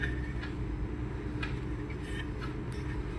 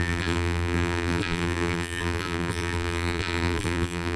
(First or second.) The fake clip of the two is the second